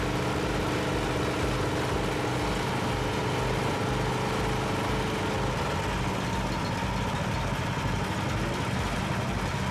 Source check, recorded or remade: recorded